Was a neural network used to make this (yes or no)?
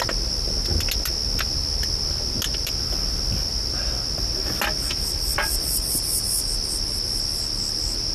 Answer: no